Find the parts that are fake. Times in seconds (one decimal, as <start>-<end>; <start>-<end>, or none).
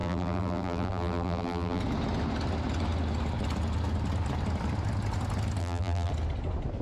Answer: 0.0-1.8; 5.6-6.1